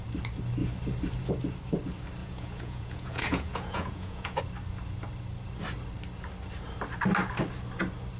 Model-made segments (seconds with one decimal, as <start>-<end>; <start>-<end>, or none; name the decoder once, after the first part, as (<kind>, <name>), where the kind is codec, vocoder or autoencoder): 2.2-4.4 (vocoder, Vocos)